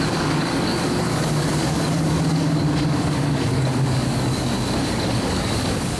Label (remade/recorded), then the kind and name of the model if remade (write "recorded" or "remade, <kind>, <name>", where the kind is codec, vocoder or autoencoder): remade, codec, DAC